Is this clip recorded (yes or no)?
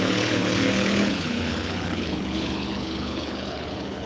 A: no